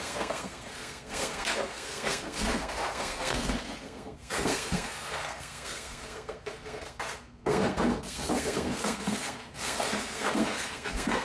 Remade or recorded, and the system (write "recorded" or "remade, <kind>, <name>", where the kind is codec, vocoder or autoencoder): remade, codec, SNAC